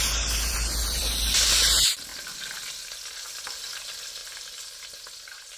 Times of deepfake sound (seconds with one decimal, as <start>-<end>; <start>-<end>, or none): 4.2-4.9